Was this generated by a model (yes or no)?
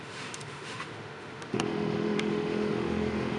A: yes